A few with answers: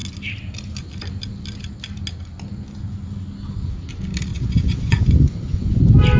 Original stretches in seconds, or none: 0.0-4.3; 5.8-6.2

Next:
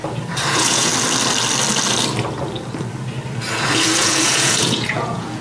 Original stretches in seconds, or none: 0.0-0.5; 0.9-3.7